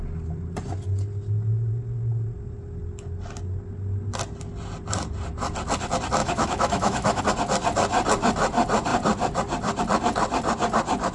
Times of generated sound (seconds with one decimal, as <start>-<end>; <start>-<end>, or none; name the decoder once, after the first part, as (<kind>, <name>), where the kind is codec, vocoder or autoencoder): 6.2-7.2 (autoencoder, DAC-VAE)